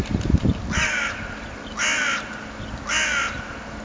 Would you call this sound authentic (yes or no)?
yes